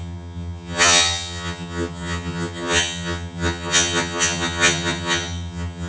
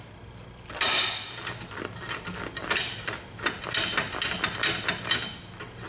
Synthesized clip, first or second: first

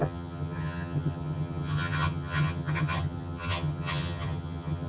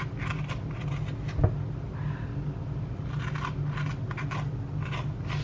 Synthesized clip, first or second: first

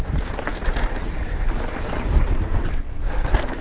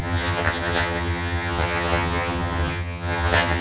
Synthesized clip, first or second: second